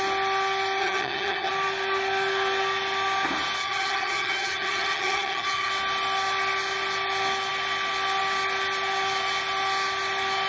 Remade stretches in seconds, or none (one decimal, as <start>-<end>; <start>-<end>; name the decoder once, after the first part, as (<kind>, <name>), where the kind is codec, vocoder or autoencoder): 0.8-1.5 (vocoder, HiFi-GAN); 3.6-5.7